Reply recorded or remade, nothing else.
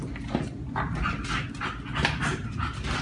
recorded